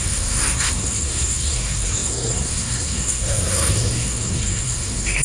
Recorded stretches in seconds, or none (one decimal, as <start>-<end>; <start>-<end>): none